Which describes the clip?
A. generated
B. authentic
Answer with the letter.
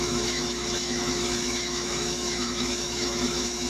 A